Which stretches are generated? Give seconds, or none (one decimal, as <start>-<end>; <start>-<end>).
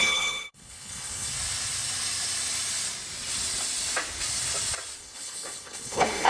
0.0-1.3; 5.0-6.3